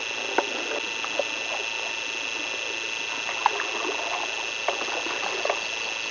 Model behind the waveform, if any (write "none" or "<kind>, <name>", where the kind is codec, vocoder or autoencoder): none